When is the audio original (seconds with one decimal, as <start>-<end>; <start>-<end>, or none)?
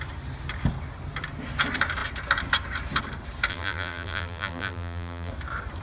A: 0.0-3.5; 5.3-5.8